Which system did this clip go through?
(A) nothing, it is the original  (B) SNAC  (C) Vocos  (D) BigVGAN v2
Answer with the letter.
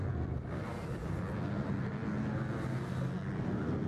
A